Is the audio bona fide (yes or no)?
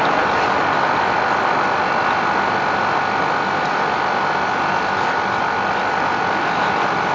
yes